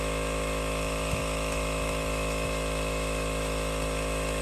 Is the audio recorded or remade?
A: remade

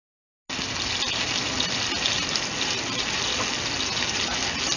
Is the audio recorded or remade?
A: recorded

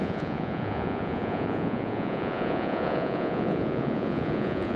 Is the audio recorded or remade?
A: remade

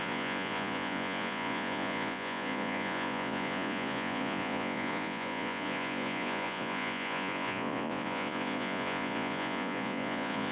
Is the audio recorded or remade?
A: remade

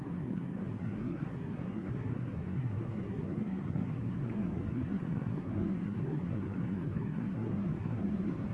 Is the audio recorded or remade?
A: remade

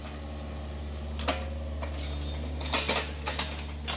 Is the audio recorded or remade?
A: recorded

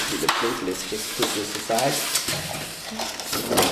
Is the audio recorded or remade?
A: recorded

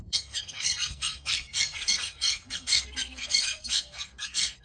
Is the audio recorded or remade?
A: remade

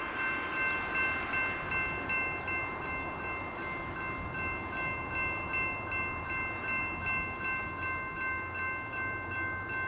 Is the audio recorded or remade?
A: recorded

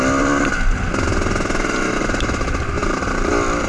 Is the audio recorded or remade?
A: recorded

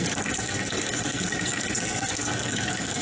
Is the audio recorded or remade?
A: remade